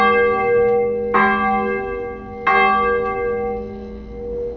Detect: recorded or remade recorded